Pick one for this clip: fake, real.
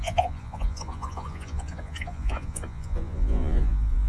fake